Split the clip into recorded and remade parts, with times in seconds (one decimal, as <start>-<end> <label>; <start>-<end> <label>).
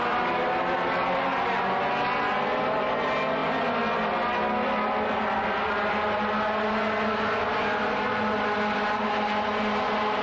0.0-10.2 recorded